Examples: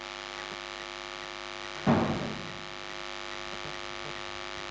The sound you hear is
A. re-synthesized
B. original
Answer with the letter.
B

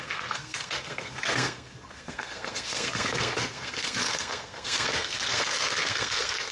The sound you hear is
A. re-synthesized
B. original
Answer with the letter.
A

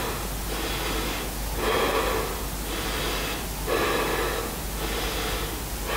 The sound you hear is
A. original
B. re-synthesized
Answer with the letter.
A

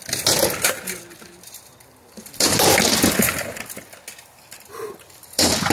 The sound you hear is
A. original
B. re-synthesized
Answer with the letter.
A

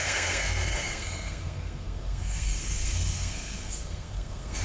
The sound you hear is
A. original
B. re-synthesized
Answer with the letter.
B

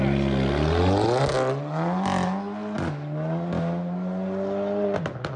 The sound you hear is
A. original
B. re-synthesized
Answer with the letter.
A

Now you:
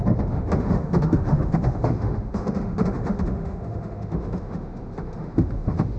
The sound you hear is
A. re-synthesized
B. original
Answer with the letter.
A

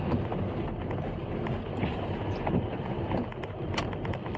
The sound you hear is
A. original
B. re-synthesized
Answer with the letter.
A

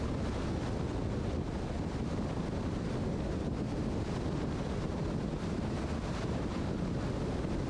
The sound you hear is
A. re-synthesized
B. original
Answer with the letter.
B